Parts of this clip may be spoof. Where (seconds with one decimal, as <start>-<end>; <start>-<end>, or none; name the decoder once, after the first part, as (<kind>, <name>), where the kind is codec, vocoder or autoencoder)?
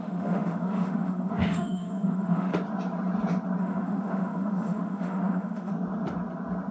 0.0-2.5 (autoencoder, DAC-VAE); 3.6-5.7